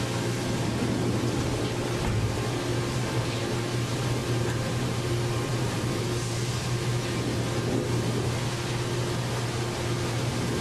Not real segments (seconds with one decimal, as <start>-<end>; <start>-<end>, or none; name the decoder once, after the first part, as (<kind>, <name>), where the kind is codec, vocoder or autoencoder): 2.7-3.4 (vocoder, BigVGAN v2); 4.2-5.1; 5.5-7.0